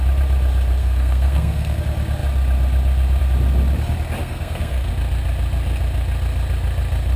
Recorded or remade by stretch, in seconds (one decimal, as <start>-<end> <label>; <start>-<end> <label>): 0.0-0.8 recorded; 0.8-1.8 remade; 1.8-4.2 recorded; 4.2-4.9 remade; 4.9-7.2 recorded